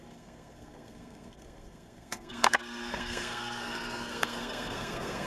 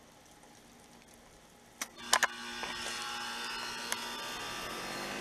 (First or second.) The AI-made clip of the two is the first